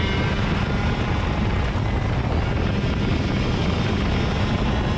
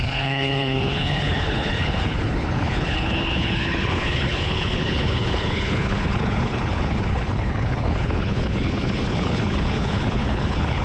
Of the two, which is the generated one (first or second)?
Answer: second